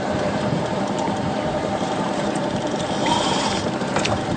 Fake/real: fake